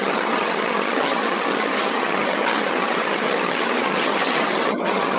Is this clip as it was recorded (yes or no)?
no